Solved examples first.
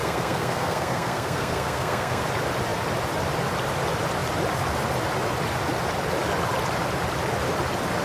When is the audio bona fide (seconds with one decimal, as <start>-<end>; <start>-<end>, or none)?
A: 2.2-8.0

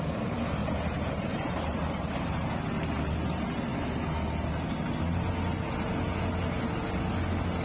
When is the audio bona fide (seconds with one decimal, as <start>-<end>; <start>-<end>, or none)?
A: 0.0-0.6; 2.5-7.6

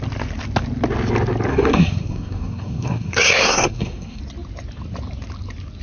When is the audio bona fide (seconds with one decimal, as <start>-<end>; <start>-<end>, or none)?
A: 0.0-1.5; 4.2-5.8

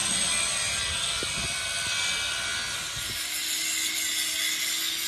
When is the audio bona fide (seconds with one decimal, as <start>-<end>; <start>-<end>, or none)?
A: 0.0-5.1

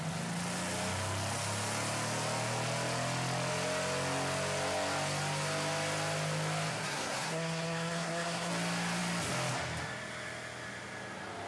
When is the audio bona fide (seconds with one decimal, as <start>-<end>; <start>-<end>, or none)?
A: 0.0-6.7; 8.5-11.5